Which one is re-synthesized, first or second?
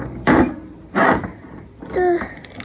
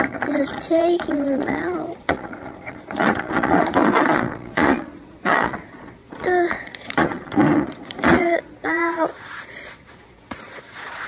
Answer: second